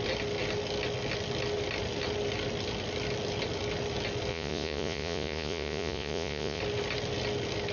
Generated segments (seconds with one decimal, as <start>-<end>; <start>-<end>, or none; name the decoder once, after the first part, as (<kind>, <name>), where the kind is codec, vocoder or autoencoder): 4.3-6.6 (vocoder, Vocos)